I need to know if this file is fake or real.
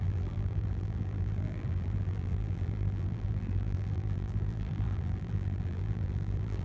fake